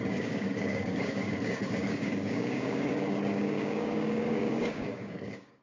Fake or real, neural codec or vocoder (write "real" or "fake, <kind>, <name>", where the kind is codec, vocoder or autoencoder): fake, codec, DAC